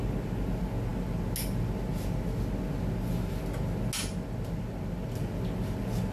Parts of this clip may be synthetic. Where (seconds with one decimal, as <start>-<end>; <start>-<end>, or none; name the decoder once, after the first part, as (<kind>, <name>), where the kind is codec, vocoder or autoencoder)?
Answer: none